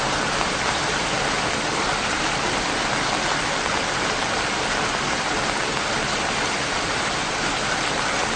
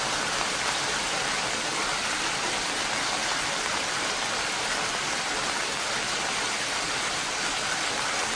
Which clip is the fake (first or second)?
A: second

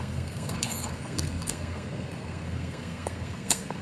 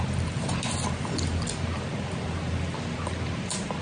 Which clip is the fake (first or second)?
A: first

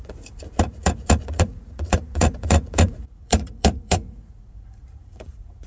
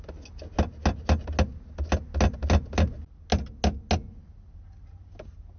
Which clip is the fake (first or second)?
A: first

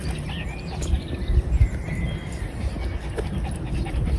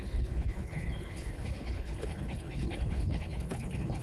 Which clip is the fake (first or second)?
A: second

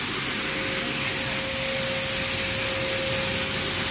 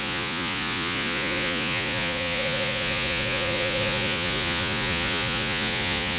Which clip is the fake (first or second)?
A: second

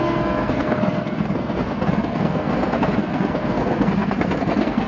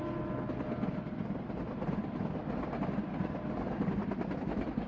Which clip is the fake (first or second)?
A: first